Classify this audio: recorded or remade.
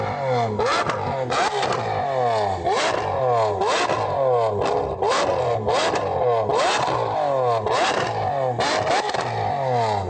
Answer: recorded